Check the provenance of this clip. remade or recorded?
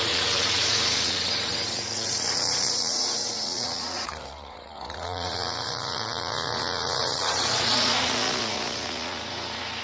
remade